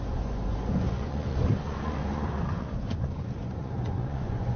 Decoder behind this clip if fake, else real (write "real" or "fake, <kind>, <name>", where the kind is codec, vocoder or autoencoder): fake, vocoder, Vocos